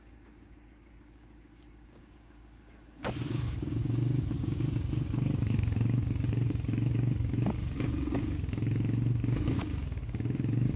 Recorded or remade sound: remade